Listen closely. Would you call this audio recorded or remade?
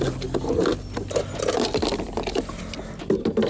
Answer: recorded